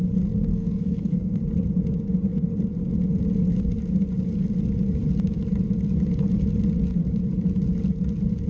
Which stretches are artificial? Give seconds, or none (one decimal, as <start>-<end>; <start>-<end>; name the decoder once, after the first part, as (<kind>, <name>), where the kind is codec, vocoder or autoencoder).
0.5-1.4 (codec, SNAC)